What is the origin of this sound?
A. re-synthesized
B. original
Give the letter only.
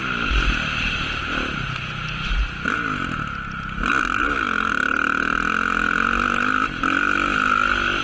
B